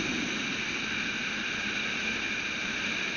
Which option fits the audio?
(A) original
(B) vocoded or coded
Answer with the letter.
A